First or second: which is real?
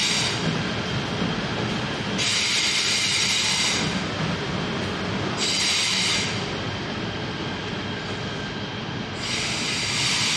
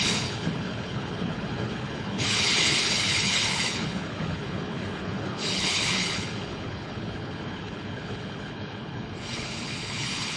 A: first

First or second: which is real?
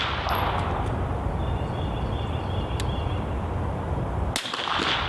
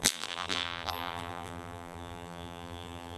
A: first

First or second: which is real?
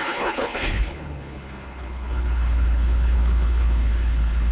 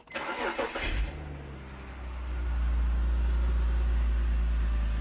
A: second